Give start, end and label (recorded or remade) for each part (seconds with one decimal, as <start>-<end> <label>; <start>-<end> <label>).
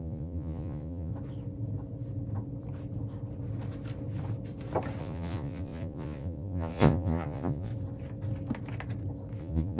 0.0-1.1 remade; 1.1-5.0 recorded; 5.0-7.7 remade; 7.7-9.4 recorded; 9.4-9.8 remade